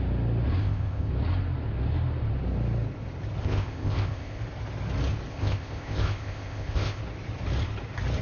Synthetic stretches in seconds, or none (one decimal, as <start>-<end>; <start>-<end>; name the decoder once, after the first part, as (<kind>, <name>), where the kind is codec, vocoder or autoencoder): 0.6-1.1 (codec, ZipCodec); 3.4-4.4; 5.3-7.0